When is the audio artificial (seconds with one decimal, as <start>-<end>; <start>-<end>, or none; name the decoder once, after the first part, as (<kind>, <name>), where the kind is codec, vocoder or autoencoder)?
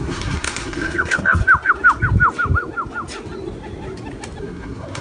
0.0-1.4 (codec, SNAC); 4.4-5.0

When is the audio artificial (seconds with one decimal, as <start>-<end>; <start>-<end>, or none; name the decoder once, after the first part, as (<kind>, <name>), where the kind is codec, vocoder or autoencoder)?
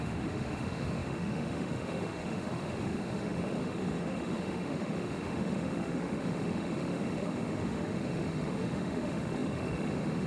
0.0-10.3 (autoencoder, DAC-VAE)